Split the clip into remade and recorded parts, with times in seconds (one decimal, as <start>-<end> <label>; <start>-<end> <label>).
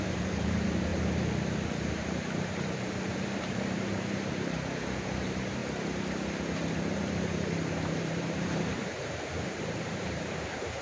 0.0-0.9 remade; 0.9-1.9 recorded; 1.9-5.6 remade; 5.6-7.0 recorded; 7.0-10.8 remade